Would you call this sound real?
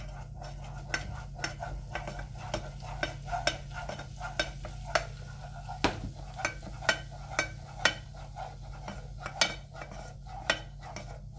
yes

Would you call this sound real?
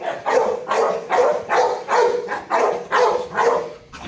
yes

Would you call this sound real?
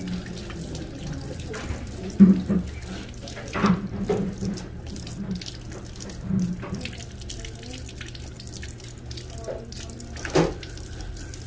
yes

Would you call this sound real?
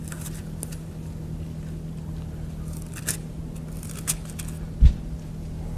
yes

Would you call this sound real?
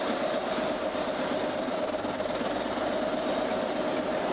yes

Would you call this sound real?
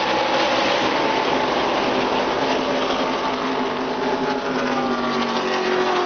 yes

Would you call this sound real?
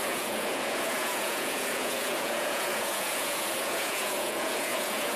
no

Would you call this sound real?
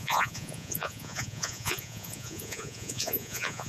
no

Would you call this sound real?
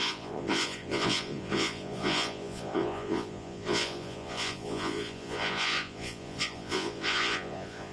no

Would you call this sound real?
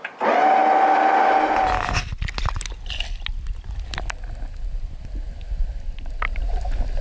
yes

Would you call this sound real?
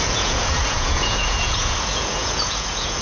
no